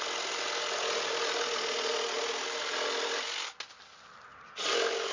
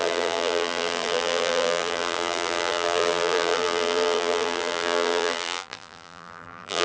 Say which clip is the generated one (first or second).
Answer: second